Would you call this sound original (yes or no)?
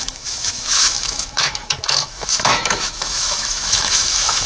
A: no